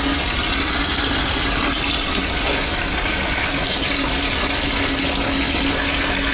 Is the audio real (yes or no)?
yes